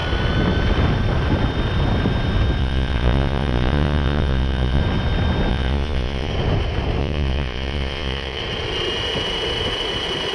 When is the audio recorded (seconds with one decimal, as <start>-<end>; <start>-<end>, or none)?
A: 0.0-2.6; 4.8-5.5; 6.3-7.0; 8.4-10.3